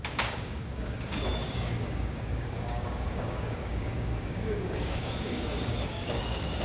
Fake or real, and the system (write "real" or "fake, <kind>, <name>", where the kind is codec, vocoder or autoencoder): fake, codec, DAC